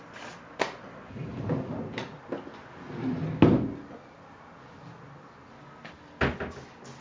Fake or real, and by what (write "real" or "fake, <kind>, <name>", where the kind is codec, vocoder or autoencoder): real